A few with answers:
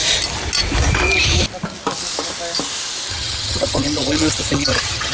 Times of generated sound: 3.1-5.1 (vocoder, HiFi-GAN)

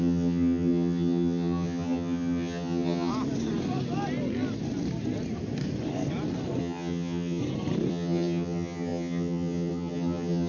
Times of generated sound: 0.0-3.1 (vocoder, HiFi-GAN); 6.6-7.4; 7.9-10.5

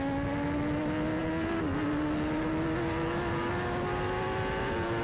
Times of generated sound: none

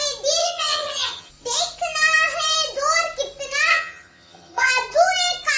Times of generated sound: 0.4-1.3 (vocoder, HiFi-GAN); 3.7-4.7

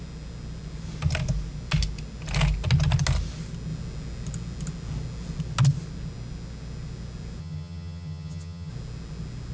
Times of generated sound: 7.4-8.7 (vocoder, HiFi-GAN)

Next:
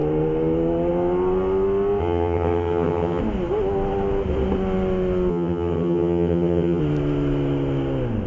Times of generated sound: 2.0-3.2 (vocoder, HiFi-GAN); 5.3-6.8